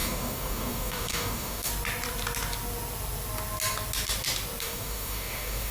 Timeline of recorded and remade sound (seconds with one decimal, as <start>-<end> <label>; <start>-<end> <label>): 0.0-1.7 remade; 1.7-4.6 recorded; 4.6-5.7 remade